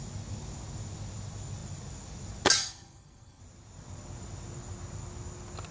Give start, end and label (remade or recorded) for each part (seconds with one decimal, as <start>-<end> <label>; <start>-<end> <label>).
0.0-2.6 recorded; 2.6-3.4 remade; 3.4-5.7 recorded